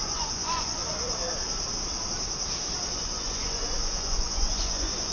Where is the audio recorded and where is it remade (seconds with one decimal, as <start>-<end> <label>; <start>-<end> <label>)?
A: 0.0-0.8 remade; 0.8-2.9 recorded; 2.9-5.1 remade